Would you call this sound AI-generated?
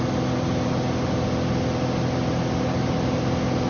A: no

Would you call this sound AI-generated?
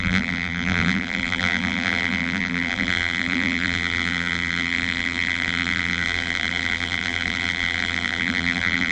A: yes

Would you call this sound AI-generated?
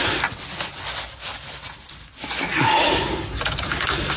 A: no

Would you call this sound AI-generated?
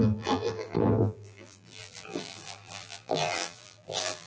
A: yes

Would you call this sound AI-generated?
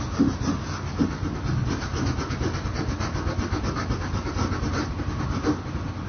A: no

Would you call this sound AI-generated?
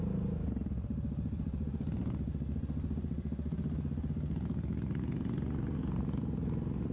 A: no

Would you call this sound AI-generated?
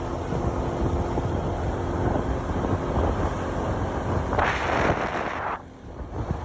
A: no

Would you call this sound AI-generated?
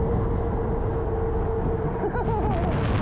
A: no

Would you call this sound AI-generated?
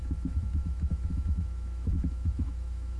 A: yes